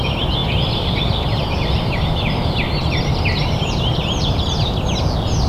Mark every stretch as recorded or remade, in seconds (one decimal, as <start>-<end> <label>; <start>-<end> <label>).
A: 0.0-0.4 recorded; 0.4-3.7 remade; 3.7-5.5 recorded

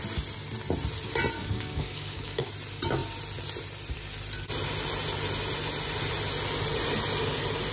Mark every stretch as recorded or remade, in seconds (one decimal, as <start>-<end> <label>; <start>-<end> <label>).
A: 0.0-1.4 recorded; 1.4-2.5 remade; 2.5-7.7 recorded

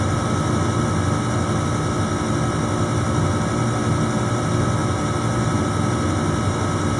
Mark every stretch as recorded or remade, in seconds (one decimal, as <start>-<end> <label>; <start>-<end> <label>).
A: 0.0-7.0 recorded

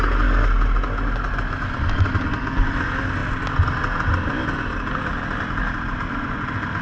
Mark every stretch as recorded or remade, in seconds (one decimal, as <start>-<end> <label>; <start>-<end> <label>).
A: 0.0-6.8 recorded